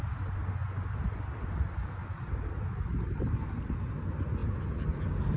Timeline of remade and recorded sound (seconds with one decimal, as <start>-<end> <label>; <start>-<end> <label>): 0.0-5.4 recorded